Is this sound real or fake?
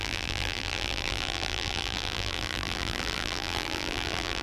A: fake